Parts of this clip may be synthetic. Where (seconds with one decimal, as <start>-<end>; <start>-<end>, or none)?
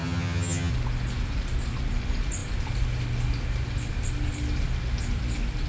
0.0-0.7